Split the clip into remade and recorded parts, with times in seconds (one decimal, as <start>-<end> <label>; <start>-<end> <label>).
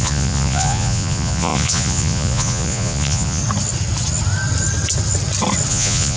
0.0-3.4 remade; 3.4-5.7 recorded; 5.7-6.2 remade